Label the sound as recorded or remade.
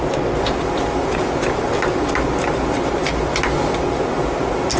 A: recorded